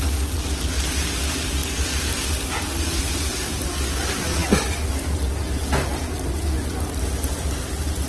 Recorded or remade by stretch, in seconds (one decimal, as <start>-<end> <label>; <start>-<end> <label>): 0.0-8.1 recorded